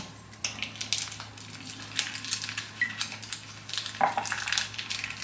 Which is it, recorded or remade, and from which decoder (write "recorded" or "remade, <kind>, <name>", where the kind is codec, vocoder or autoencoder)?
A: recorded